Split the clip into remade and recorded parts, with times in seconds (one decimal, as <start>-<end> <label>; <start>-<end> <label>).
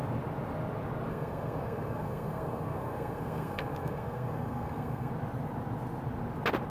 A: 0.0-1.1 recorded; 1.1-5.1 remade; 5.1-6.7 recorded